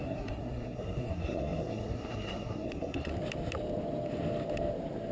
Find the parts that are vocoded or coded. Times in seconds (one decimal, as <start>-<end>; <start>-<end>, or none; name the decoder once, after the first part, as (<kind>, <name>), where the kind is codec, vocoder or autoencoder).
0.0-3.1 (codec, SNAC)